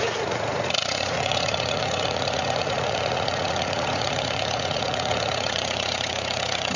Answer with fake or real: fake